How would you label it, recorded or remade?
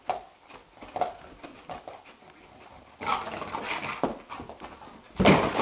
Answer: recorded